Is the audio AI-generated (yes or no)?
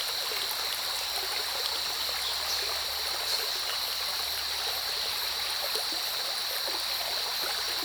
no